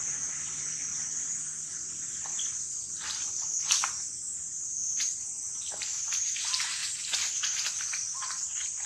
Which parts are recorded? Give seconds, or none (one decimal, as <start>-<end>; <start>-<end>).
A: 0.0-8.9